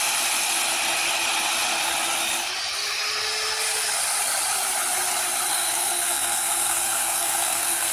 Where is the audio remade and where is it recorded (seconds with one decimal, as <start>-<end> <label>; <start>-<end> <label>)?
0.0-5.5 recorded; 5.5-7.9 remade